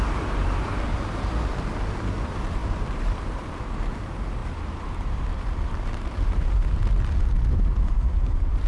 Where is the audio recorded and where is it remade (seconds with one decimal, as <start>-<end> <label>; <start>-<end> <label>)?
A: 0.0-6.6 remade; 6.6-7.5 recorded; 7.5-8.7 remade